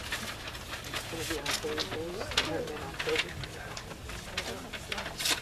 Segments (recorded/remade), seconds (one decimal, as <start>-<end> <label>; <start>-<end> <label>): 0.0-5.4 recorded